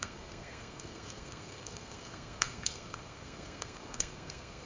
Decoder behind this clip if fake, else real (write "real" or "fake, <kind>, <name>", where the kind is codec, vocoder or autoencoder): fake, codec, SNAC